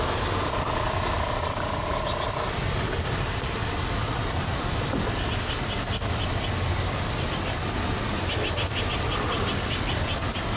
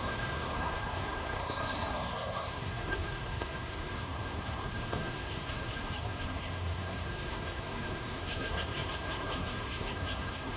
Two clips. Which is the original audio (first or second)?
first